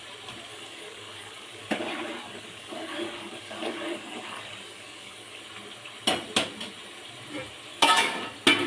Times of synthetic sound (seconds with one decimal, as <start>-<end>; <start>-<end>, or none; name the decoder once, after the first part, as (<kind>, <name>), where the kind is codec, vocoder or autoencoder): 0.5-5.4 (codec, DAC); 7.7-8.2